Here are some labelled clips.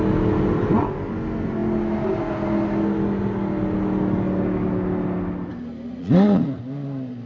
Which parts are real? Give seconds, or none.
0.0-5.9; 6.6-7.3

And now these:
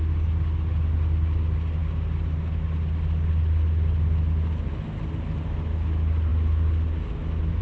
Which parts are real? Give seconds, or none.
0.0-7.6